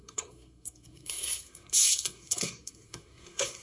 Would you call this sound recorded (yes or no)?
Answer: no